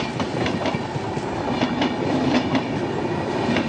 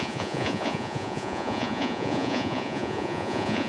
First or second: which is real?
first